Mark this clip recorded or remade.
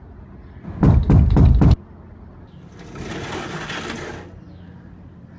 recorded